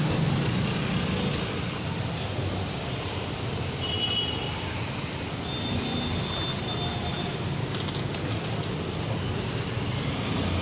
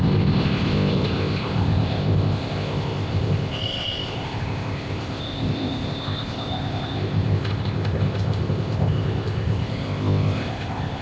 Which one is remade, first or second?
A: second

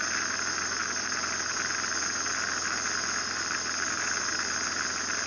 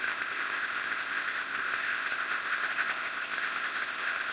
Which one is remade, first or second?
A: second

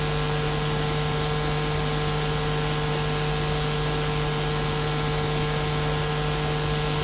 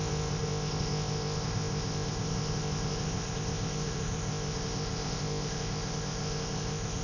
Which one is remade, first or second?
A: second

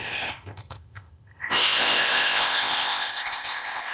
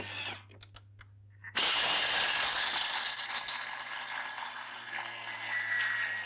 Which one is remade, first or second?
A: first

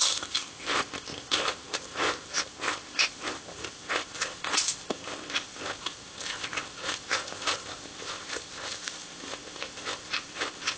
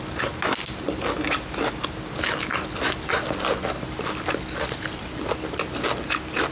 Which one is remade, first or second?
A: first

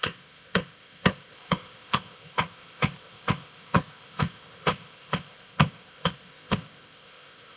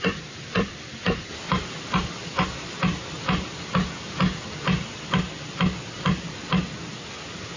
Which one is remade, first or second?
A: first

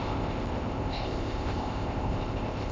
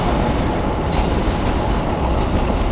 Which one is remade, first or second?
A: first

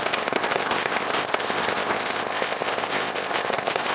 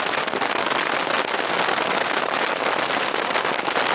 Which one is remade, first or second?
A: first